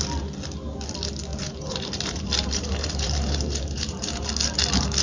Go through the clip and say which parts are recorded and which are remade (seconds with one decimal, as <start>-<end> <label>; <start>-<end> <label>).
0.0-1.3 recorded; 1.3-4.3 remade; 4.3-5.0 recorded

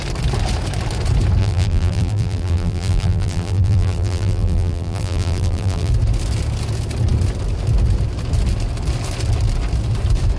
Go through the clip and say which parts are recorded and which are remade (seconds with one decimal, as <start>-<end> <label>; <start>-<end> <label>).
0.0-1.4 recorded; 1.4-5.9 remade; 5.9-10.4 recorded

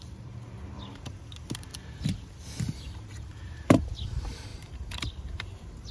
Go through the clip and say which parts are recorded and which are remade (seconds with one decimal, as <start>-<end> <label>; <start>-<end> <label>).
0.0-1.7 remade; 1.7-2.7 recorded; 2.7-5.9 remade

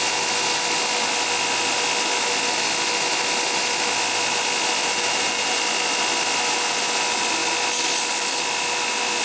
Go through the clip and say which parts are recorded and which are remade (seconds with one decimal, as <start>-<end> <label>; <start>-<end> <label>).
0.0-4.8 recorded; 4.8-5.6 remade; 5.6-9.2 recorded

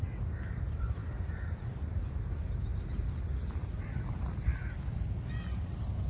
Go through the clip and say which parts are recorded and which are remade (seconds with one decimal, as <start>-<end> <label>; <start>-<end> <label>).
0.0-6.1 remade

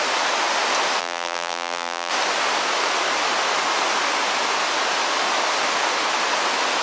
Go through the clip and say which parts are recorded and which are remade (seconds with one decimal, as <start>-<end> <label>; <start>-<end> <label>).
0.0-1.0 recorded; 1.0-2.1 remade; 2.1-6.8 recorded